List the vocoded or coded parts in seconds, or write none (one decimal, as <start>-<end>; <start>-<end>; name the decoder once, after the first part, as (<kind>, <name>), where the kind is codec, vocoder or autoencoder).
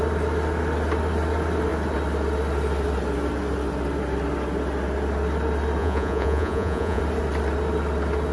5.8-7.0 (vocoder, Vocos)